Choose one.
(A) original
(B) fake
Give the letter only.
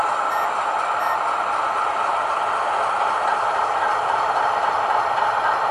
A